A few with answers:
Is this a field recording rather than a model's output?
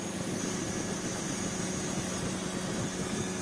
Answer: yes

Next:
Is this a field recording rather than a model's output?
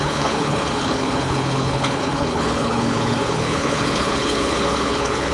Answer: no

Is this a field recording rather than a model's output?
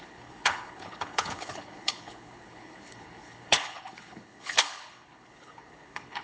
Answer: no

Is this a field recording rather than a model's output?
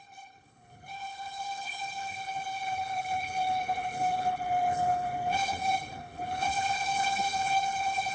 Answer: no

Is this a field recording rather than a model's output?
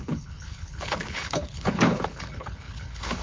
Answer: no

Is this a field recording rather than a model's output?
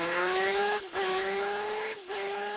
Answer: no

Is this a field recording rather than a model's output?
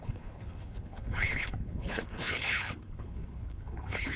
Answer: no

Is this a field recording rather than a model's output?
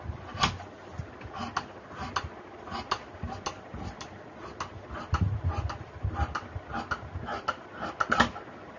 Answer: yes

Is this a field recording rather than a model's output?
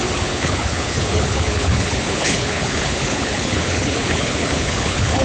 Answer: no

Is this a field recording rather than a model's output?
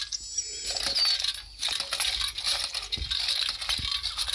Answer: yes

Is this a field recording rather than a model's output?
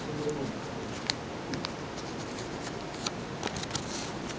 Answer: yes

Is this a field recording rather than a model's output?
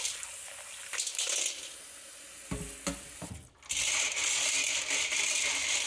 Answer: yes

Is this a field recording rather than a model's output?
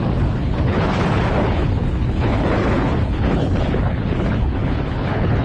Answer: no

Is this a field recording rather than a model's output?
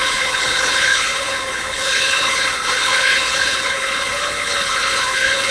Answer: no